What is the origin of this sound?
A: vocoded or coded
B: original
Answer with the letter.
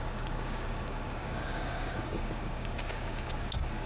A